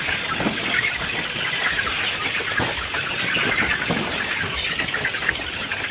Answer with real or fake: real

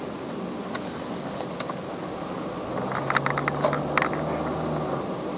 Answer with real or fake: real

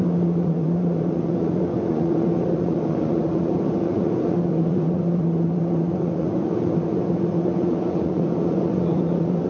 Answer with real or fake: fake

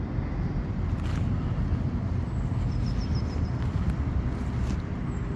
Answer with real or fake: real